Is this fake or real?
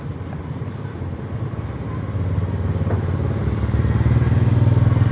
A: real